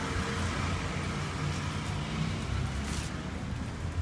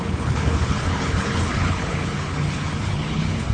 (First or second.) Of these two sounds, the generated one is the second